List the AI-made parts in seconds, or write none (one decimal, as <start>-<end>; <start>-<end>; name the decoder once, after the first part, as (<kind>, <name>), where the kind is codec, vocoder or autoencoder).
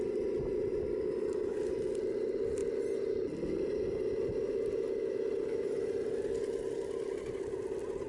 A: none